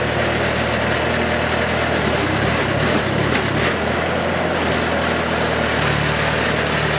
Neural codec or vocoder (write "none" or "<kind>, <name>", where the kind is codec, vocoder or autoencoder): none